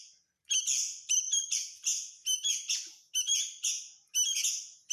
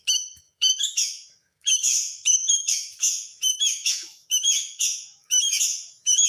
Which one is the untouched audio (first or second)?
first